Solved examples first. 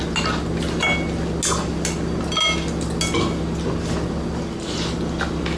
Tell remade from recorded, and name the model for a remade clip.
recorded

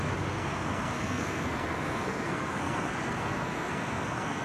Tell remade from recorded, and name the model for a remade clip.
remade, codec, SNAC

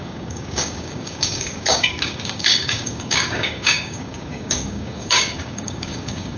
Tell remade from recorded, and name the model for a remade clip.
remade, codec, DAC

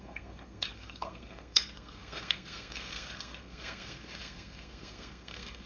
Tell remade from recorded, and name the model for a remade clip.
remade, codec, SNAC